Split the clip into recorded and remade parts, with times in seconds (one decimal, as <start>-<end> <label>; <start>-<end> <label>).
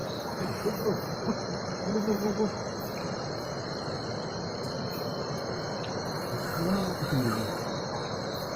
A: 0.0-3.8 remade; 3.8-5.1 recorded; 5.1-5.8 remade; 5.8-6.8 recorded; 6.8-7.7 remade; 7.7-8.6 recorded